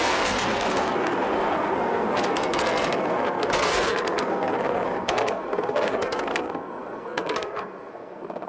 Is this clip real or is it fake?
fake